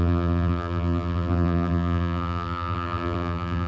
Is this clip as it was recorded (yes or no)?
no